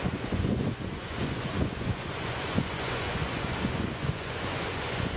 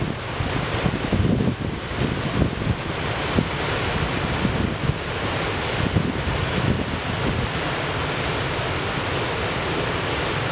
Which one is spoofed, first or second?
first